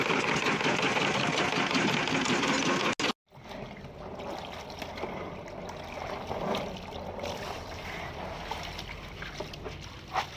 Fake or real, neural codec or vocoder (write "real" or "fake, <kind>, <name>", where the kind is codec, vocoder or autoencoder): real